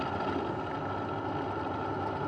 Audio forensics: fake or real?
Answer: real